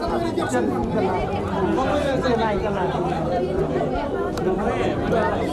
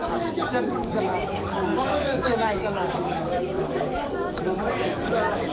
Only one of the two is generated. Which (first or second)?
second